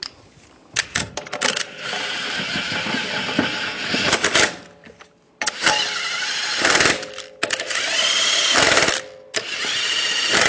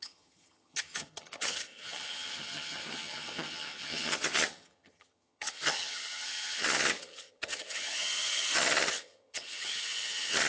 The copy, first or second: second